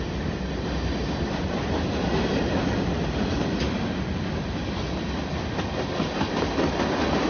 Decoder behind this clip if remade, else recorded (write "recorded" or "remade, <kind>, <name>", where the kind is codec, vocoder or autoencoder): recorded